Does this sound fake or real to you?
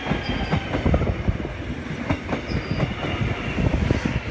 real